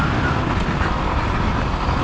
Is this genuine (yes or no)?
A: yes